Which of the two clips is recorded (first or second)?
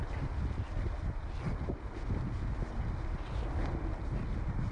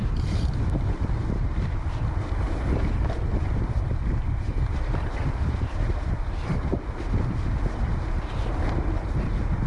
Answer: first